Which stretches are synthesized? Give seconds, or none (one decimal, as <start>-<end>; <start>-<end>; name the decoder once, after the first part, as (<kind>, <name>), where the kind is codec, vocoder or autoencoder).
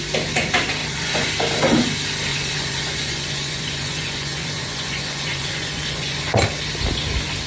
0.8-1.3 (vocoder, Vocos); 2.3-6.4